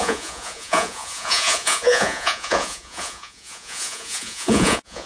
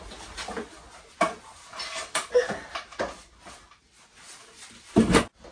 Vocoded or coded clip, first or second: first